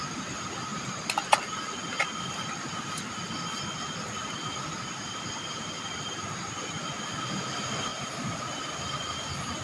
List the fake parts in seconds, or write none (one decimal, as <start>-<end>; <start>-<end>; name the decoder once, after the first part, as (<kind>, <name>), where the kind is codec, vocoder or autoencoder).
7.9-8.4 (vocoder, BigVGAN v2)